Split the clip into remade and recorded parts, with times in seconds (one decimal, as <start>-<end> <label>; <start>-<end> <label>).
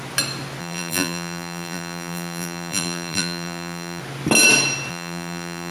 0.0-0.6 recorded; 0.6-4.0 remade; 4.0-4.9 recorded; 4.9-5.7 remade